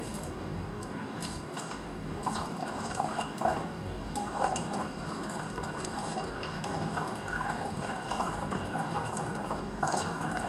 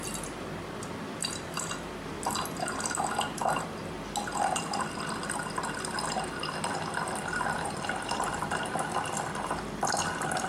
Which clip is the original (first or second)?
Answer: second